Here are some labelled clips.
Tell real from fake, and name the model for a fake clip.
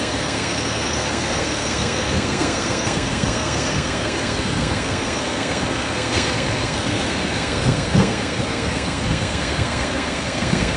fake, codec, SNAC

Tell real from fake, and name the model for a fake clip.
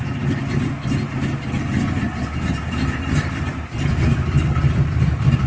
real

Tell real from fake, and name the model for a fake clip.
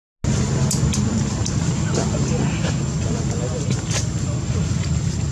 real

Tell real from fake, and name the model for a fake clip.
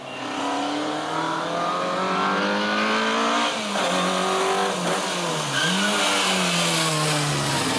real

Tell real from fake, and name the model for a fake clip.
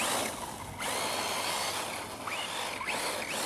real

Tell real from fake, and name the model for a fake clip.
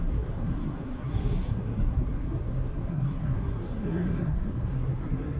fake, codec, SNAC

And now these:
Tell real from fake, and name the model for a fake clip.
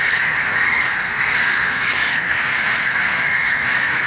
fake, codec, SNAC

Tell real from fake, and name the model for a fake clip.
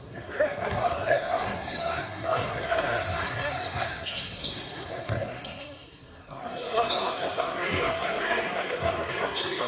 fake, codec, SNAC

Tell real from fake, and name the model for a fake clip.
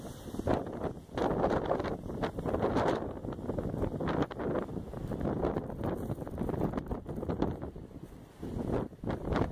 real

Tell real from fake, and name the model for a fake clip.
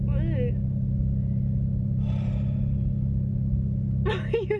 real